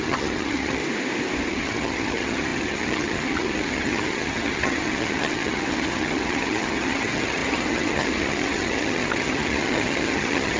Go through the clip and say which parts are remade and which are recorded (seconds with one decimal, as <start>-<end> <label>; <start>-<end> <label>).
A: 0.0-0.8 remade; 0.8-1.5 recorded; 1.5-10.6 remade